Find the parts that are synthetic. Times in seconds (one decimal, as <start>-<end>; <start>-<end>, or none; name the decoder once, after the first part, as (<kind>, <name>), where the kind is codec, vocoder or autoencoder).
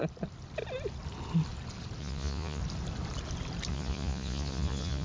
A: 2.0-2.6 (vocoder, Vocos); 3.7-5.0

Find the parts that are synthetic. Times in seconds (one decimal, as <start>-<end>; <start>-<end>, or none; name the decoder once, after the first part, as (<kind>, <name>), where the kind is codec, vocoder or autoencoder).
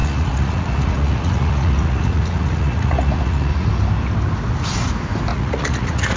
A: 0.0-3.7 (vocoder, Vocos); 5.3-6.2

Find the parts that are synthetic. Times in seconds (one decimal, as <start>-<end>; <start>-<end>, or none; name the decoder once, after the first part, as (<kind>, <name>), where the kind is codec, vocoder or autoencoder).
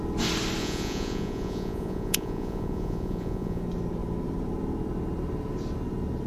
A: 0.6-3.6 (vocoder, Vocos)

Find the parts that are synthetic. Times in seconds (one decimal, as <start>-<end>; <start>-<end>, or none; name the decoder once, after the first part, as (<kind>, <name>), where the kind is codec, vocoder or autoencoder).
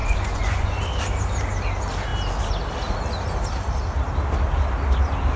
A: 0.0-0.8 (vocoder, Vocos)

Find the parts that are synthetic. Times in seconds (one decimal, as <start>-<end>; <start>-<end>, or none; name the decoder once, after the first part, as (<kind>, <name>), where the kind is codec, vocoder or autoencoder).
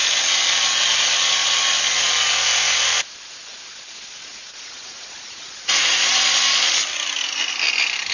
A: 4.3-5.9 (vocoder, Vocos)